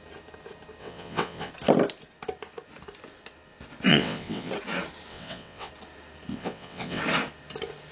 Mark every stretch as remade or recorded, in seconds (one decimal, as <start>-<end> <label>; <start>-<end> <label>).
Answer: 0.0-0.8 recorded; 0.8-1.5 remade; 1.5-3.9 recorded; 3.9-4.5 remade; 4.5-5.1 recorded; 5.1-5.7 remade; 5.7-6.3 recorded; 6.3-7.0 remade; 7.0-7.9 recorded